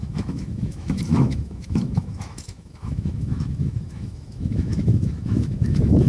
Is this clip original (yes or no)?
no